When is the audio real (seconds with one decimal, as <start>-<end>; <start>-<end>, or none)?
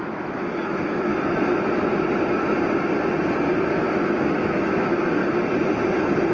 1.1-3.7; 5.2-6.3